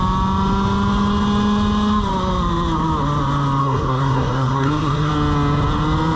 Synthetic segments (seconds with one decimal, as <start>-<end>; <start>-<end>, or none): 3.6-5.1

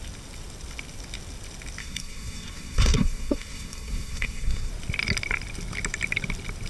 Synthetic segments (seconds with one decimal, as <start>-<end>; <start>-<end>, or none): 1.8-4.7